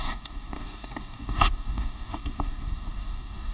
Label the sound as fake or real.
fake